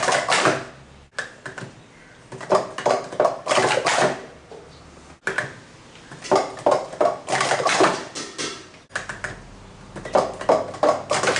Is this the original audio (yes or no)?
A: yes